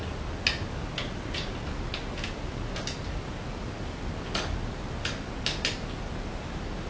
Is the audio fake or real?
real